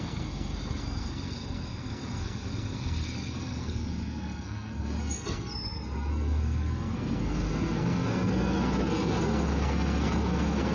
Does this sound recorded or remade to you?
remade